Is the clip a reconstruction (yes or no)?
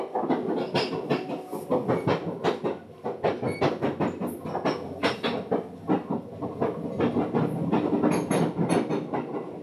no